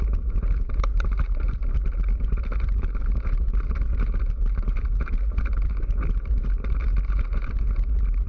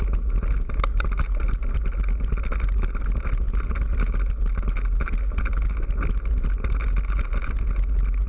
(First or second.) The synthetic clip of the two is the first